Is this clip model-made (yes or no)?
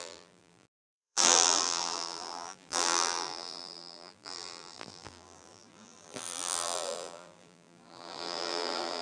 yes